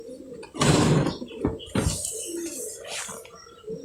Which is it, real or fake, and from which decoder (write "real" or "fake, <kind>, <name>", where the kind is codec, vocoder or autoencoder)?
real